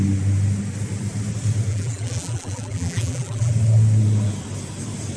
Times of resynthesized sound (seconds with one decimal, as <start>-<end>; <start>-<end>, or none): 1.7-3.5